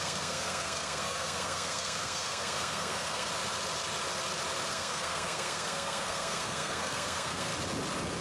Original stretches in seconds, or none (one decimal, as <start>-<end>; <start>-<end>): 3.3-4.7; 7.5-8.2